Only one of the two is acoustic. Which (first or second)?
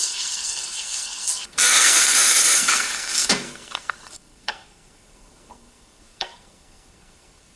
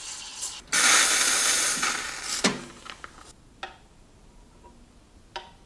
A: second